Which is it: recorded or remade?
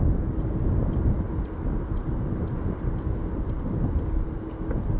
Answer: recorded